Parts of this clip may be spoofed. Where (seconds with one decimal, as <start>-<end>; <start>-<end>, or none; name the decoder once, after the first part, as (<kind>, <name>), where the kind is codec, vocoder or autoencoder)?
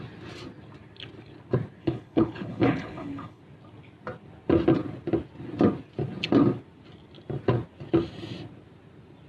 1.8-3.4 (codec, HILCodec)